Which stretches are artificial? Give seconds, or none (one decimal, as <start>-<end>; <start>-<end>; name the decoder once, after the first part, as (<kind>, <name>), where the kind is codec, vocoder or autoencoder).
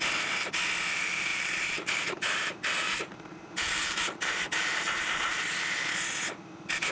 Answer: 1.3-5.4 (vocoder, BigVGAN v2)